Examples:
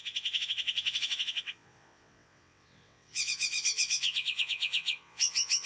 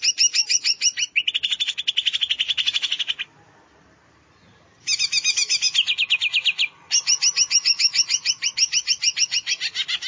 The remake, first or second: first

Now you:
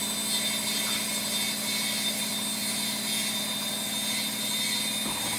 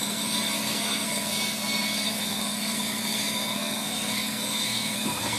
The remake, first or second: second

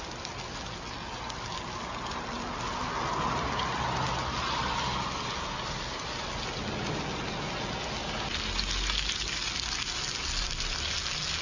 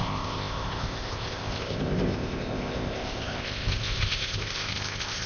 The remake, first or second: second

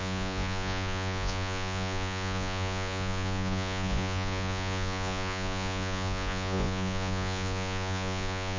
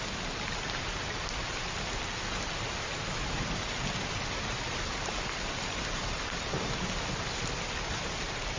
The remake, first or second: first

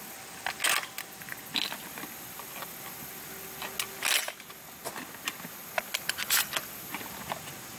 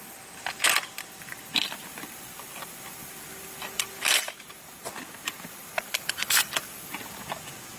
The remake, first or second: second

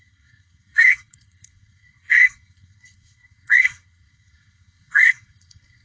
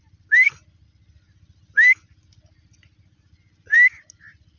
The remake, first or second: first